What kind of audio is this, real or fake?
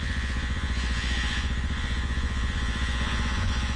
fake